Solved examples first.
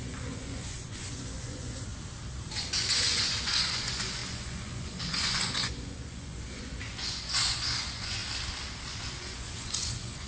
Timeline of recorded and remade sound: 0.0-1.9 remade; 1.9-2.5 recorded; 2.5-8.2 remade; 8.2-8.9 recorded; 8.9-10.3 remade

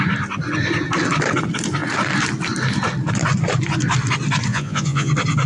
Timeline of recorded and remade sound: 0.0-4.5 recorded; 4.5-5.1 remade; 5.1-5.5 recorded

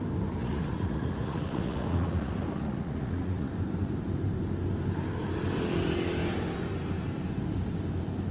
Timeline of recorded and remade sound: 0.0-0.4 recorded; 0.4-3.5 remade; 3.5-8.3 recorded

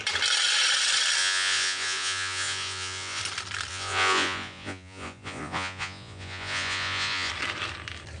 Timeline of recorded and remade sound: 0.0-1.2 recorded; 1.2-3.2 remade; 3.2-3.7 recorded; 3.7-7.3 remade; 7.3-8.2 recorded

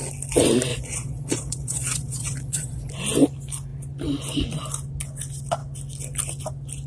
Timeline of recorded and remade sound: 0.0-0.7 recorded; 0.7-2.9 remade; 2.9-6.9 recorded

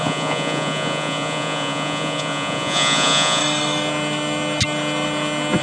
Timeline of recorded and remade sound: 0.0-3.4 remade; 3.4-5.6 recorded